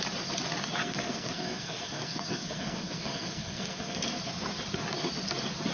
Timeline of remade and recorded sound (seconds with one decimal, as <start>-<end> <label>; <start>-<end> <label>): 0.0-0.8 recorded; 0.8-4.2 remade; 4.2-5.7 recorded